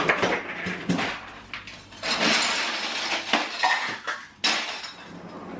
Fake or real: real